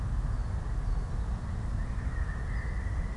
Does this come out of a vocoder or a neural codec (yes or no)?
no